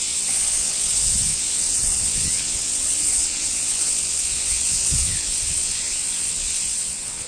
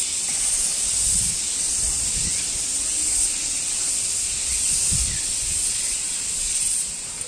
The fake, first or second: first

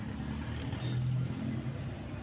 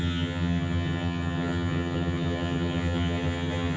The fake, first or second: second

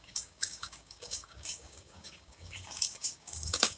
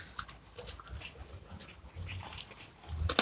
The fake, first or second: first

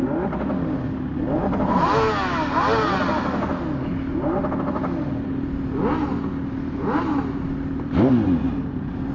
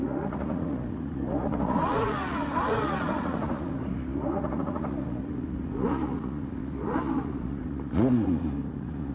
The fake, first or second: second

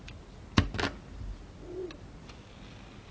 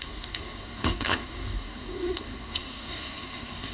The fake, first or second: second